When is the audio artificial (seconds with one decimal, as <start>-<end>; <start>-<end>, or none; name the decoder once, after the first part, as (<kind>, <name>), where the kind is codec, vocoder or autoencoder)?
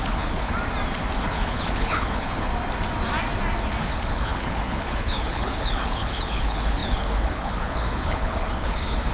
0.0-0.5 (codec, HILCodec); 1.2-2.5; 3.8-9.1